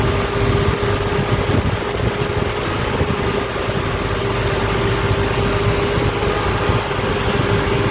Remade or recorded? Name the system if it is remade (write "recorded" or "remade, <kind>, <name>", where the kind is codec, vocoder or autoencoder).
recorded